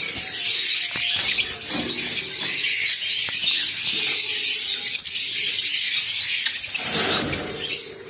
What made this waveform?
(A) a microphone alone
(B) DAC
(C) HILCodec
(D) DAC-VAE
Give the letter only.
A